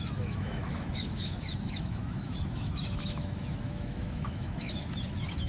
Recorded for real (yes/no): no